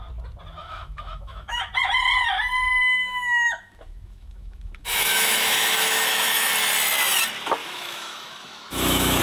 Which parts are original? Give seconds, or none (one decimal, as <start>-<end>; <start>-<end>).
0.0-0.6; 1.7-2.8; 6.5-7.6